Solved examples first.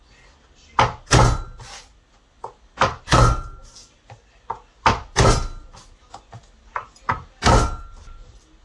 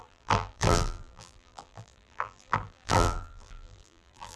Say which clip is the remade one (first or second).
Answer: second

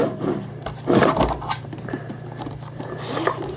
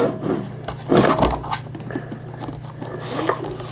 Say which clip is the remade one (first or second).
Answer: first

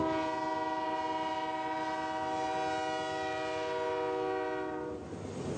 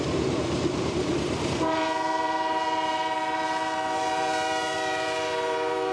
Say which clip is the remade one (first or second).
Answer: second